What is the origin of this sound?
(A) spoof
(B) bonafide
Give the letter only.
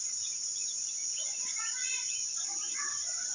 A